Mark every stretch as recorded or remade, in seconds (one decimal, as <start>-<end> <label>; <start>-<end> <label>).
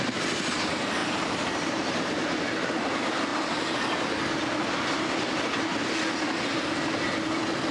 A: 0.0-1.0 recorded; 1.0-2.4 remade; 2.4-7.7 recorded